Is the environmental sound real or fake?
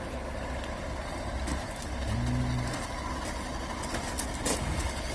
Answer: real